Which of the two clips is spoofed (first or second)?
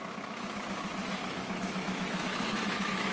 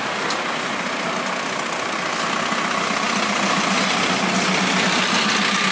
first